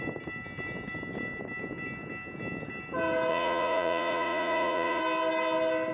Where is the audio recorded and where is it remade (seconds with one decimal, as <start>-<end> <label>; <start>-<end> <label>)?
0.0-3.3 recorded; 3.3-5.0 remade; 5.0-5.9 recorded